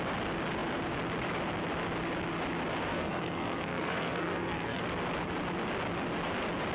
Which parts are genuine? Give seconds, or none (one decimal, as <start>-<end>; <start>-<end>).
0.0-2.9; 4.8-6.7